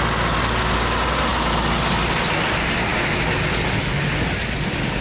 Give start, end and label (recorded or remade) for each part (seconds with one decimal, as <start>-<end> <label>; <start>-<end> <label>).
0.0-5.0 recorded